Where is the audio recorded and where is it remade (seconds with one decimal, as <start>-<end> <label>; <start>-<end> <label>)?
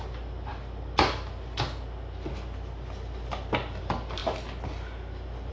0.0-5.5 recorded